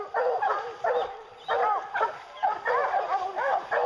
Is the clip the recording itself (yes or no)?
yes